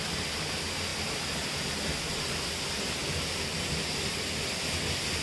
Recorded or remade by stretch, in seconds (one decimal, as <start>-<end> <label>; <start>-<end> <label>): 0.0-5.2 recorded